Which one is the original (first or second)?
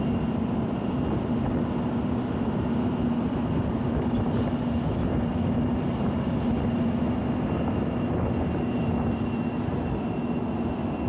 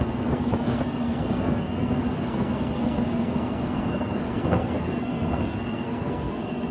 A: first